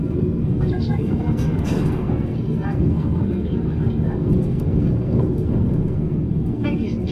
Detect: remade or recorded remade